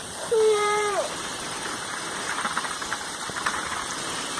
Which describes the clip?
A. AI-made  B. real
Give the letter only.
A